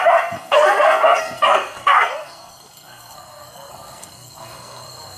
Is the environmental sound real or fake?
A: fake